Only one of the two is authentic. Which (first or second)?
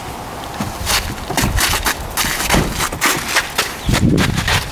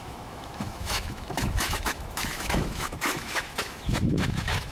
first